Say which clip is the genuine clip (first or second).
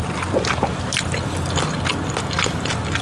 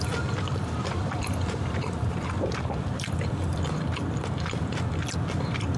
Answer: first